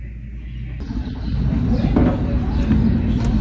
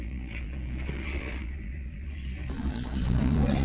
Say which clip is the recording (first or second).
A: first